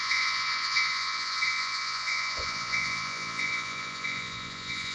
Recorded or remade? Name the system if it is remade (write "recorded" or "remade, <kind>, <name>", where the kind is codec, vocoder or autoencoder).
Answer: remade, vocoder, Vocos